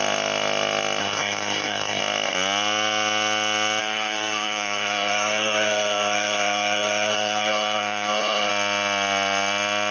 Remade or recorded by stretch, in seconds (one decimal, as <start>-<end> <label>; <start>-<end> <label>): 0.0-1.0 recorded; 1.0-2.0 remade; 2.0-3.8 recorded; 3.8-8.5 remade; 8.5-9.9 recorded